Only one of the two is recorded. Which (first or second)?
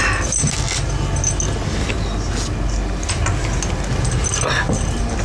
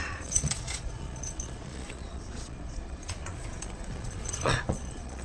first